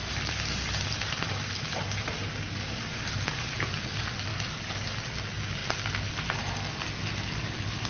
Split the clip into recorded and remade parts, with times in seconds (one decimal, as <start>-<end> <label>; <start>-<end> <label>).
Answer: 0.0-3.7 remade; 3.7-4.3 recorded; 4.3-4.9 remade; 4.9-7.9 recorded

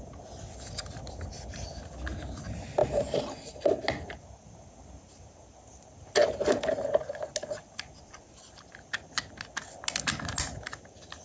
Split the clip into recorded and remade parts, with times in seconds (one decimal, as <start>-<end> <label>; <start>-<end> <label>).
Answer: 0.0-11.2 recorded

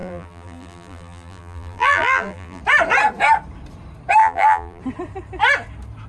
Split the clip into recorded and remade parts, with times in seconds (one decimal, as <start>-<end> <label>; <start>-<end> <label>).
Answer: 0.0-2.6 remade; 2.6-4.2 recorded; 4.2-4.8 remade; 4.8-6.1 recorded

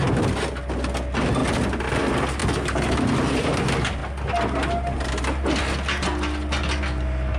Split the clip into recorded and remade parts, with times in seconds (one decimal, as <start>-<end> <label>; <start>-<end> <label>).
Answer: 0.0-7.4 recorded

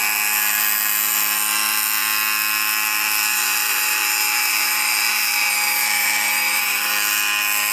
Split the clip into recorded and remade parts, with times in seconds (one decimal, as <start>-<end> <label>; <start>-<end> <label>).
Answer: 0.0-3.3 recorded; 3.3-6.9 remade; 6.9-7.7 recorded

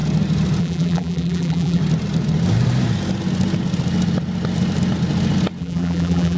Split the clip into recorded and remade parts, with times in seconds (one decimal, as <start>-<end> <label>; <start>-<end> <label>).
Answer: 0.0-0.6 recorded; 0.6-1.8 remade; 1.8-5.6 recorded; 5.6-6.4 remade

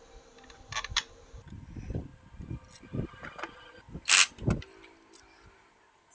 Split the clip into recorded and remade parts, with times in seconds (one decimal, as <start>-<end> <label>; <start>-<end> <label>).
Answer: 0.0-6.1 recorded

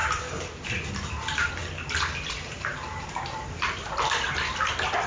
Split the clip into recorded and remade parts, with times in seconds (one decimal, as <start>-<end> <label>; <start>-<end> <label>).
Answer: 0.0-2.7 recorded; 2.7-4.0 remade; 4.0-5.1 recorded